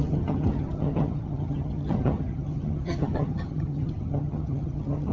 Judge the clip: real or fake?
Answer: fake